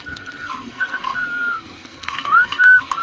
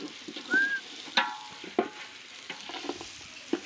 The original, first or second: second